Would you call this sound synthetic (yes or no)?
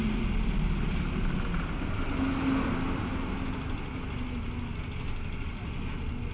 no